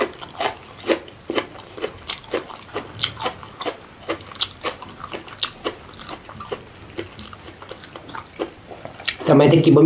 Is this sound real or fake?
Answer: real